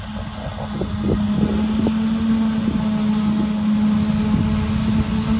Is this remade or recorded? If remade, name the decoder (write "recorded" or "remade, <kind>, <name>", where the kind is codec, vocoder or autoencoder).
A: recorded